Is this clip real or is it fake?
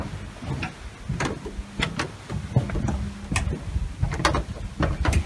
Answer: real